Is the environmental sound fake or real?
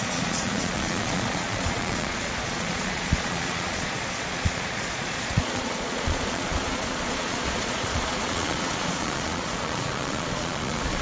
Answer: fake